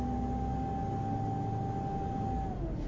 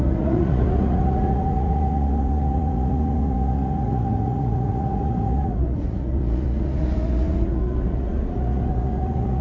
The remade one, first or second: second